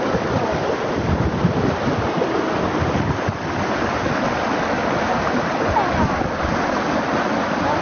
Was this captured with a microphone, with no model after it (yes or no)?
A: yes